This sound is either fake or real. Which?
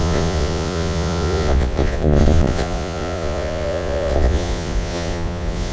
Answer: fake